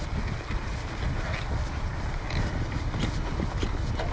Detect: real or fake real